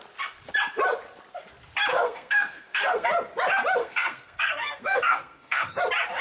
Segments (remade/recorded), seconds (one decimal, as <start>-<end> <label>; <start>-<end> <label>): 0.0-1.9 recorded; 1.9-3.1 remade; 3.1-3.8 recorded; 3.8-5.8 remade; 5.8-6.2 recorded